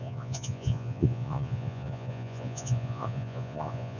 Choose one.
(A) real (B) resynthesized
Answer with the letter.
B